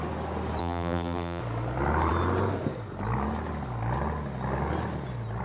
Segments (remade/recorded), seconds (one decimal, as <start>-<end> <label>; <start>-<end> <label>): 0.0-0.6 recorded; 0.6-1.4 remade; 1.4-5.4 recorded